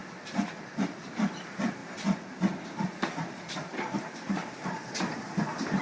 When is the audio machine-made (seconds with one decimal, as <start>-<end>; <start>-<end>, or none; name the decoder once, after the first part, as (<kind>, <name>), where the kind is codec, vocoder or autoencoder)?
0.0-1.8 (vocoder, BigVGAN v2); 2.4-5.8